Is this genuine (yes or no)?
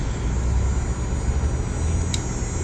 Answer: yes